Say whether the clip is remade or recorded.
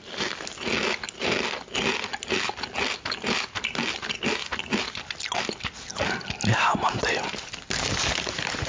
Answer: recorded